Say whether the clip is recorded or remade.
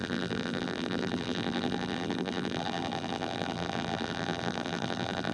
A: remade